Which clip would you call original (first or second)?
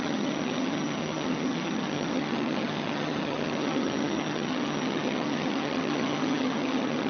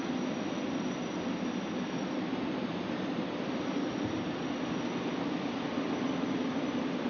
second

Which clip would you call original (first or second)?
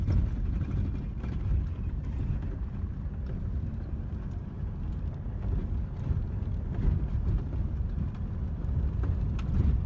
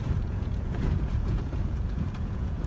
first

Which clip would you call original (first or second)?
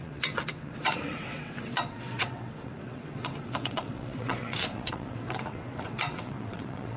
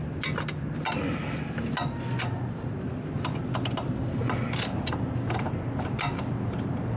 second